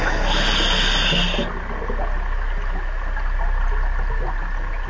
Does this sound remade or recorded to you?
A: recorded